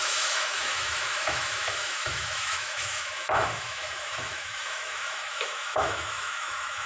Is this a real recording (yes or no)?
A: no